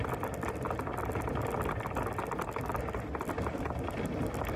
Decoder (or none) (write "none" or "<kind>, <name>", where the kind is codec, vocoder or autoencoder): none